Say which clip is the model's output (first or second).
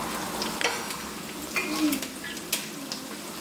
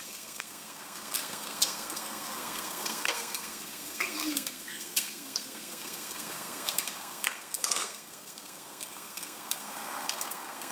second